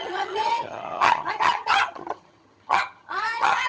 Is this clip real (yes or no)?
no